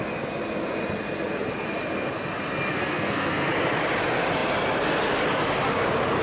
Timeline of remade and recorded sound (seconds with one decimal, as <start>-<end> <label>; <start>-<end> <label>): 0.0-2.7 recorded; 2.7-3.5 remade; 3.5-6.2 recorded